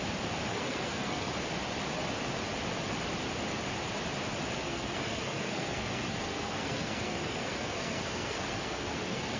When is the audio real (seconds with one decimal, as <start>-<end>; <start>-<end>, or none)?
0.0-0.5; 1.3-4.6